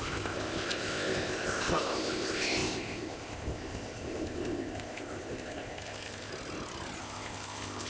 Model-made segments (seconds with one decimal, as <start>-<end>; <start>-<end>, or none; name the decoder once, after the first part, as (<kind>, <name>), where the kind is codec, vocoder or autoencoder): 0.0-6.3 (codec, ZipCodec); 7.0-7.9